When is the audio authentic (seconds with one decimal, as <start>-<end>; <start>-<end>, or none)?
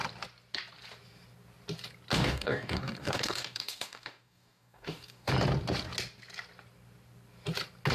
0.0-2.1; 5.3-7.9